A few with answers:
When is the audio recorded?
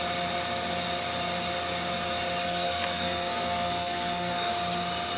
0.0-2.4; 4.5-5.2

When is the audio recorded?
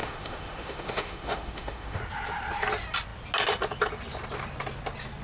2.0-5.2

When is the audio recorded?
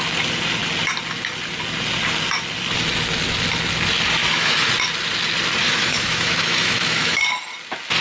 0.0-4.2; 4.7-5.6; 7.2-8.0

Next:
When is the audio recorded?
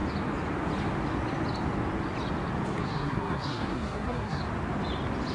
0.0-2.8; 4.4-5.3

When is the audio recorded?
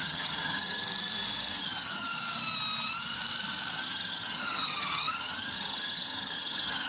0.8-1.6; 2.1-3.7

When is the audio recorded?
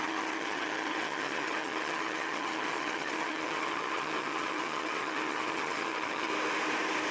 6.3-7.1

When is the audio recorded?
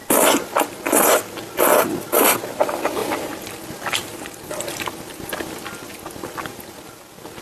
0.0-7.4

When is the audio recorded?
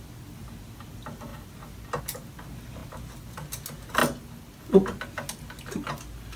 0.0-6.4